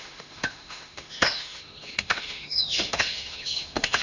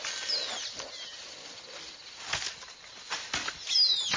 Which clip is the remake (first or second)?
first